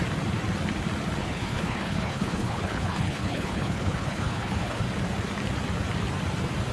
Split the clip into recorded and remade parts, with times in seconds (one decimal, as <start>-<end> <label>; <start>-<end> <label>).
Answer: 0.0-1.2 recorded; 1.2-4.8 remade; 4.8-6.7 recorded